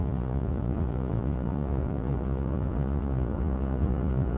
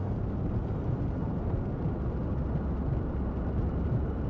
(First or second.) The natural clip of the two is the second